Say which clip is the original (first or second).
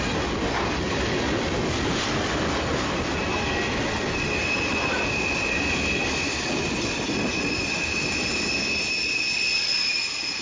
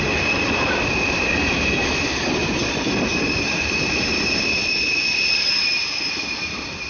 first